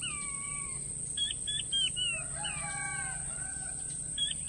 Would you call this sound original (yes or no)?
yes